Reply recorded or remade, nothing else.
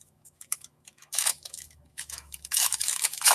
remade